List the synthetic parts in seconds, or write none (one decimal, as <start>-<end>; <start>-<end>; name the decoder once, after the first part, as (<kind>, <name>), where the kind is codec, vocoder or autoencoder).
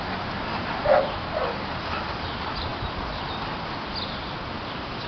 none